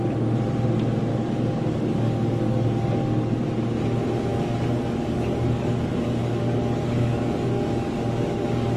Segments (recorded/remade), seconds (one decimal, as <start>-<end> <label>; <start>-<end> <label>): 0.0-1.1 recorded; 1.1-3.4 remade; 3.4-4.3 recorded; 4.3-8.8 remade